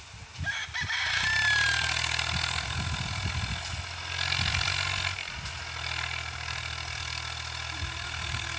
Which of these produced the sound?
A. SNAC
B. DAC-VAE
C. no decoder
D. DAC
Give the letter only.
C